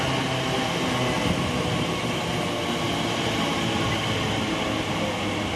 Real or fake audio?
real